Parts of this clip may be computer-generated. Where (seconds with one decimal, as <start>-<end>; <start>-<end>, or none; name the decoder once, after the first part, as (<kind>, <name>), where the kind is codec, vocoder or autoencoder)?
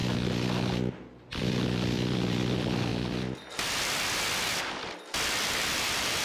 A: 1.4-2.9 (vocoder, BigVGAN v2); 3.7-6.2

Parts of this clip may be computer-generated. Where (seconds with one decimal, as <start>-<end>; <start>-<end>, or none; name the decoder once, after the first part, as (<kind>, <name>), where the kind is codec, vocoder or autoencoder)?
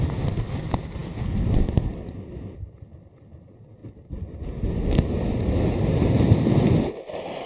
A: none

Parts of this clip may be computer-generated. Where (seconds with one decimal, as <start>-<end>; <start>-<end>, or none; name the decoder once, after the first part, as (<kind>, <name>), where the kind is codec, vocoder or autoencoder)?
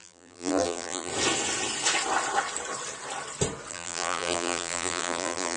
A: 0.0-1.1 (vocoder, BigVGAN v2); 3.7-5.6